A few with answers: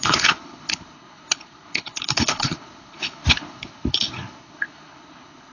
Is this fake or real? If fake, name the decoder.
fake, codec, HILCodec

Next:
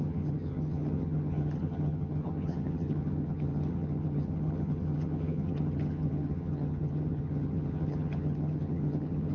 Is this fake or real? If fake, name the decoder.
fake, vocoder, HiFi-GAN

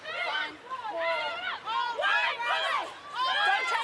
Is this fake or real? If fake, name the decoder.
real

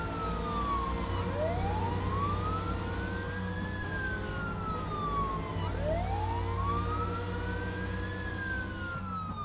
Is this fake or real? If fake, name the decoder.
real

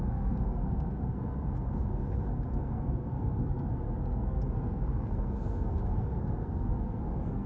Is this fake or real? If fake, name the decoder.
fake, codec, SNAC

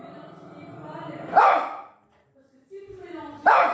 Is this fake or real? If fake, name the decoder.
fake, vocoder, BigVGAN v2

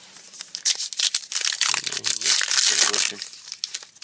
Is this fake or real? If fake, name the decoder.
real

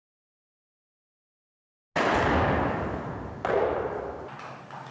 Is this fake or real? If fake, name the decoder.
real